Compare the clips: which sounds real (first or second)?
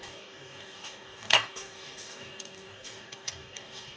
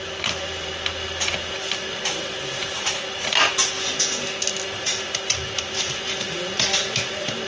second